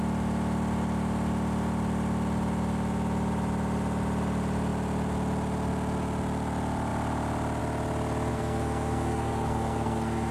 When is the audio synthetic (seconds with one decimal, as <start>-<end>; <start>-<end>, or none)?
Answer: 8.3-10.3